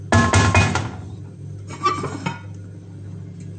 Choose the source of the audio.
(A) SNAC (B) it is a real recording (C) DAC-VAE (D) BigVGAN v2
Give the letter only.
B